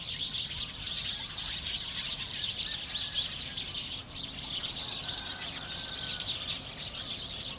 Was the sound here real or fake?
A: real